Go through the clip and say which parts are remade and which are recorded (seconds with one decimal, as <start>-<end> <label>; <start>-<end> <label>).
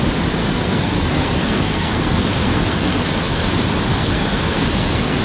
0.0-0.4 recorded; 0.4-3.5 remade; 3.5-3.9 recorded; 3.9-5.2 remade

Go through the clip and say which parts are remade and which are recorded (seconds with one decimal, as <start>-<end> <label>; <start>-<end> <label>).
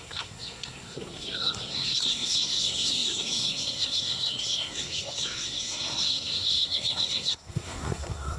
0.0-8.4 remade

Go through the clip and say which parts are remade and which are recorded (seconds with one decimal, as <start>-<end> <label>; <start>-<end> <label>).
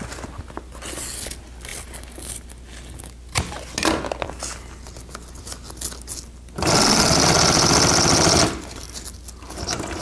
0.0-10.0 recorded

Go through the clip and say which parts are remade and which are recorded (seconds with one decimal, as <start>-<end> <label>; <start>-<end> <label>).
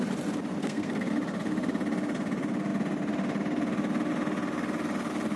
0.0-0.6 recorded; 0.6-1.1 remade; 1.1-5.4 recorded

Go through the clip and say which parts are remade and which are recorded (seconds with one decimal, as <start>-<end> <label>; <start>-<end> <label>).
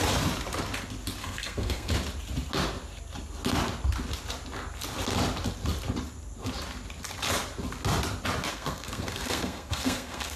0.0-1.2 recorded; 1.2-1.9 remade; 1.9-8.5 recorded; 8.5-10.4 remade